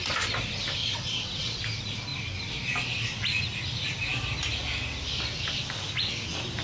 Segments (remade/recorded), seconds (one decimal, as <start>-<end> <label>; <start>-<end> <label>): 0.0-0.8 recorded; 0.8-1.6 remade; 1.6-6.6 recorded